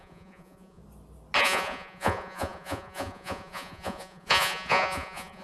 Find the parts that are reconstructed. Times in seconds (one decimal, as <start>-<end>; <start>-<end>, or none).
0.0-0.8; 1.4-5.4